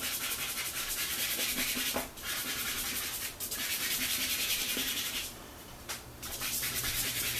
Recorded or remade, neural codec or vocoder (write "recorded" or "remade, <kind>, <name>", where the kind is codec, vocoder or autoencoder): remade, vocoder, BigVGAN v2